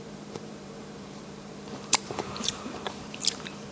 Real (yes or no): no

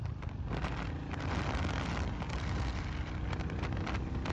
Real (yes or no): yes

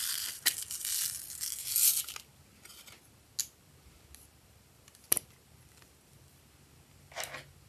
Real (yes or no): yes